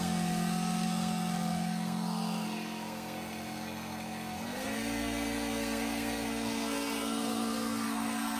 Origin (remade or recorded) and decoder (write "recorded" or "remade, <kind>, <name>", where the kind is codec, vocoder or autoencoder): remade, codec, SNAC